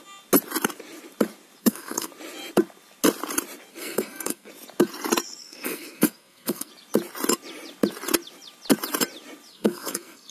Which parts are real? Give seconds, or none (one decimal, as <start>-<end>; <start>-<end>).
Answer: 0.0-1.6; 2.1-3.7; 4.5-5.4; 6.7-9.5